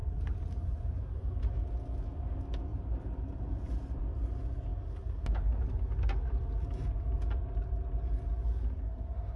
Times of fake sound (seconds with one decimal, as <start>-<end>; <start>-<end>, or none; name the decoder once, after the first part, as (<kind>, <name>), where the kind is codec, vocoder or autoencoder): 0.0-1.4 (vocoder, BigVGAN v2); 2.7-4.1